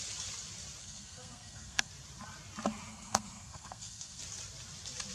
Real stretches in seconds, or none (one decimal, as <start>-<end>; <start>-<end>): 0.0-0.8; 1.9-2.9; 4.2-5.1